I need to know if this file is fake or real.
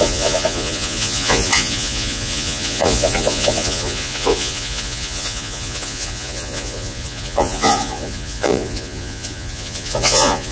fake